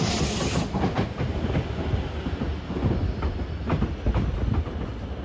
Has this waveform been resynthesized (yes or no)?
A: no